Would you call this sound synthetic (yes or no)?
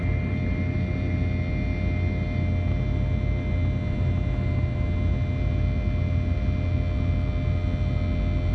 no